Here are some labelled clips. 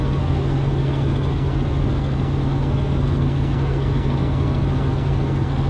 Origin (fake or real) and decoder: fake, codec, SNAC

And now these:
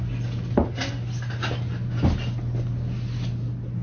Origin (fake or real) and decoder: real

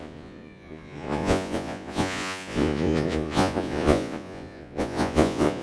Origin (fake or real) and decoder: fake, vocoder, Vocos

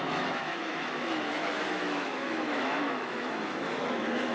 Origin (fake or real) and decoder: fake, autoencoder, DAC-VAE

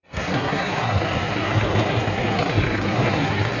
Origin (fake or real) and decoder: fake, codec, SNAC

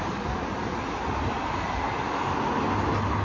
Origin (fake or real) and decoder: real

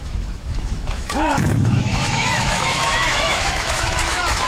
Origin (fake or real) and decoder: fake, autoencoder, DAC-VAE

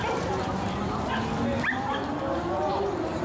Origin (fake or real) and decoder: real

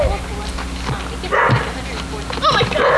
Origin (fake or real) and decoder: real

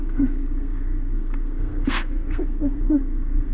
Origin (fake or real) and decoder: fake, codec, SNAC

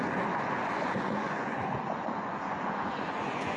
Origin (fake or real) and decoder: fake, vocoder, Vocos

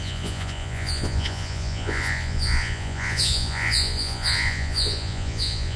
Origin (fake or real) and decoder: fake, vocoder, Vocos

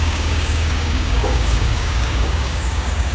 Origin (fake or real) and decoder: fake, codec, DAC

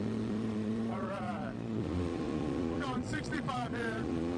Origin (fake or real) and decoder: fake, vocoder, Vocos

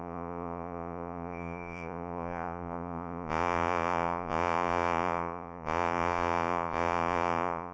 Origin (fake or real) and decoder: fake, vocoder, Vocos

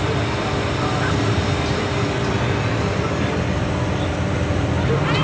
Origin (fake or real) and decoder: real